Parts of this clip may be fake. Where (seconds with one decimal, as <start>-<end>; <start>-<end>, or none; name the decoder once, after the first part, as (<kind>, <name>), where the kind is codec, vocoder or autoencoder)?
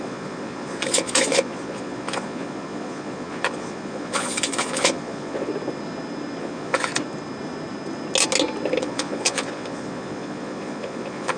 0.0-5.5 (vocoder, Vocos); 6.4-6.9; 8.8-11.4